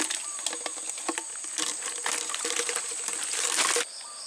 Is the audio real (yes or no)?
yes